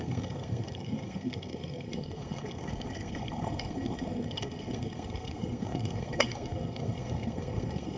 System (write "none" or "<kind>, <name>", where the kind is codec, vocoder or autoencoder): codec, SNAC